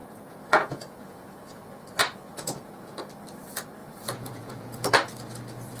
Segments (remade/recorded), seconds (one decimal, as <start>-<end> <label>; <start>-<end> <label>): 0.0-1.6 remade; 1.6-2.3 recorded; 2.3-3.1 remade; 3.1-3.8 recorded; 3.8-4.9 remade; 4.9-5.8 recorded